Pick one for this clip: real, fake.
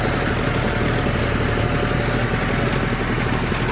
real